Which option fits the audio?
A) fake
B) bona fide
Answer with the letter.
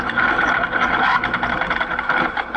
A